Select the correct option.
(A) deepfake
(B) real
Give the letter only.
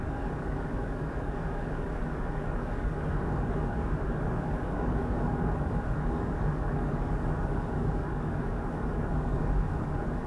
A